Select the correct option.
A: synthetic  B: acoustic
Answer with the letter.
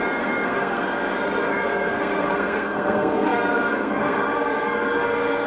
A